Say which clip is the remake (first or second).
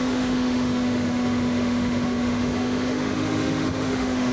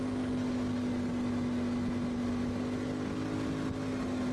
first